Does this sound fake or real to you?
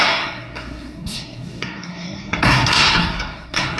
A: fake